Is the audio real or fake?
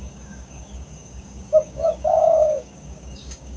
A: fake